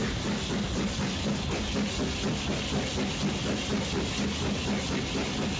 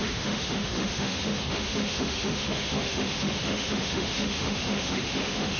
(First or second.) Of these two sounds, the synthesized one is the second